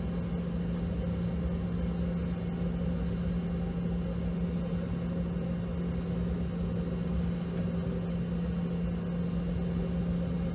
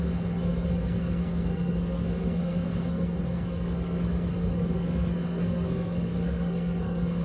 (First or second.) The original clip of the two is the first